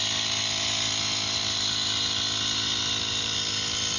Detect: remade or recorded recorded